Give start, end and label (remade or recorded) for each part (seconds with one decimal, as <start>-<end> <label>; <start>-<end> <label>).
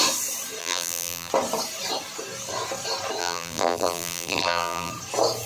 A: 0.0-0.6 recorded; 0.6-1.3 remade; 1.3-3.2 recorded; 3.2-4.9 remade; 4.9-5.5 recorded